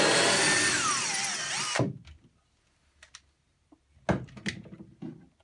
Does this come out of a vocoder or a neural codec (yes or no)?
no